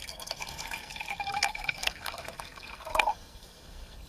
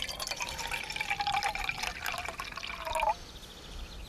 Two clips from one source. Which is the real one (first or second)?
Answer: second